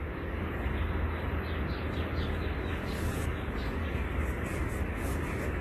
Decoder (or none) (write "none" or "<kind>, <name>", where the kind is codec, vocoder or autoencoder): codec, DAC